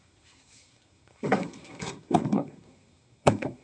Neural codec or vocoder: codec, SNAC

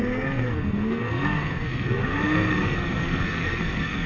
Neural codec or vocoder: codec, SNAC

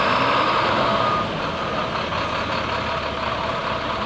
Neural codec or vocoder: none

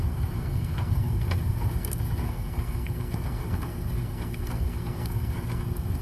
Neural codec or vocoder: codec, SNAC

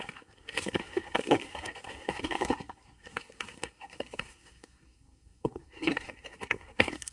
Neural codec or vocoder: codec, SNAC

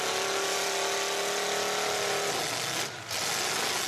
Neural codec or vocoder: none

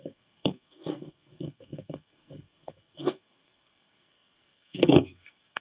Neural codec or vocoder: codec, SNAC